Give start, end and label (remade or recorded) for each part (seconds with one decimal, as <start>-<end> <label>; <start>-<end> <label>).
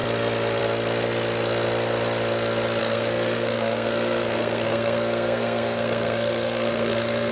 0.0-2.8 recorded; 2.8-7.3 remade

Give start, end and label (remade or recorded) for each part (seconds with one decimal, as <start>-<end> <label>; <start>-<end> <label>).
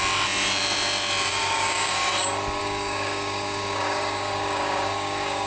0.0-1.3 recorded; 1.3-2.1 remade; 2.1-2.6 recorded; 2.6-5.5 remade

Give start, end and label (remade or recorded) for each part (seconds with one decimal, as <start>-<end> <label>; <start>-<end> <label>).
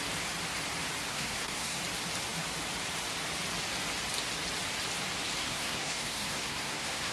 0.0-1.1 recorded; 1.1-1.8 remade; 1.8-5.4 recorded; 5.4-7.1 remade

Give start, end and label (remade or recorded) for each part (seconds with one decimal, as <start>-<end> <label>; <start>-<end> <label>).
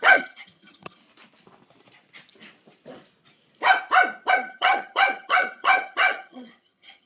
0.0-1.0 remade; 1.0-4.3 recorded; 4.3-7.1 remade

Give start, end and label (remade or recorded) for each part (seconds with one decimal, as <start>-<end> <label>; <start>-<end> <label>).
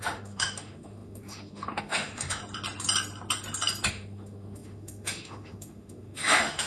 0.0-2.4 remade; 2.4-3.9 recorded; 3.9-6.7 remade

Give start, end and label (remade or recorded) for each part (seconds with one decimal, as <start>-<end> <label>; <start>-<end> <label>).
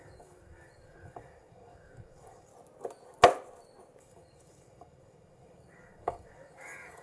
0.0-2.5 remade; 2.5-4.0 recorded; 4.0-7.0 remade